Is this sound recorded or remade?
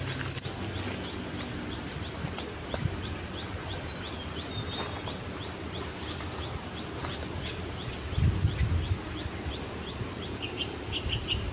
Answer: recorded